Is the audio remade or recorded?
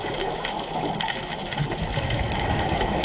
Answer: remade